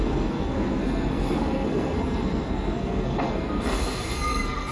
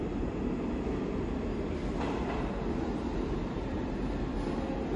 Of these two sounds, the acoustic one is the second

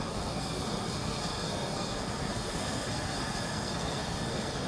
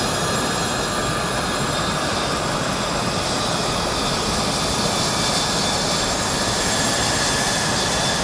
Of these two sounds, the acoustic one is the second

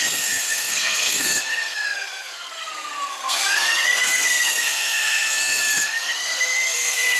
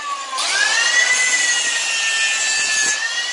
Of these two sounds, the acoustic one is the second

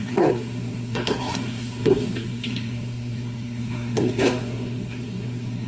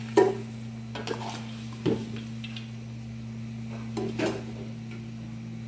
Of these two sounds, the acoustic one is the second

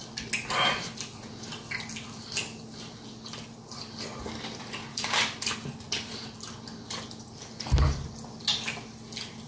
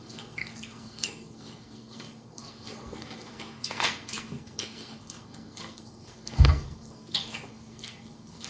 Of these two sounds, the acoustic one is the first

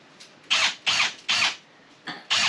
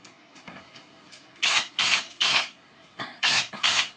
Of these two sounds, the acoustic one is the first